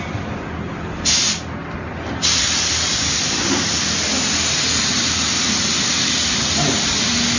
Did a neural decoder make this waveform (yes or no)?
no